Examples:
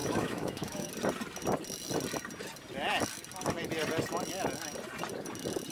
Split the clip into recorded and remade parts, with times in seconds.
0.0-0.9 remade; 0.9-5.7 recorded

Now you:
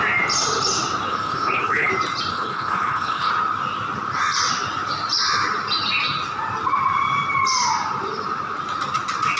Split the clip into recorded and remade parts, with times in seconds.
0.0-1.1 recorded; 1.1-1.9 remade; 1.9-2.3 recorded; 2.3-3.3 remade; 3.3-9.4 recorded

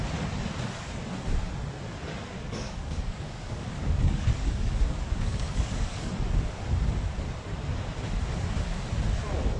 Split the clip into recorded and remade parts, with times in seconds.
0.0-2.3 recorded; 2.3-6.1 remade; 6.1-9.6 recorded